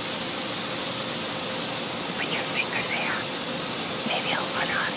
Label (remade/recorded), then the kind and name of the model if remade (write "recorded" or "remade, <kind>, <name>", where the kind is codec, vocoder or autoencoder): recorded